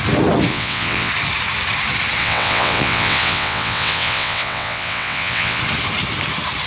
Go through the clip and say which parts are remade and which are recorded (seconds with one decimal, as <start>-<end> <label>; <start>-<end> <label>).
0.0-0.5 recorded; 0.5-1.1 remade; 1.1-2.2 recorded; 2.2-5.6 remade; 5.6-6.7 recorded